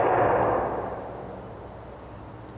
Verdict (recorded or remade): recorded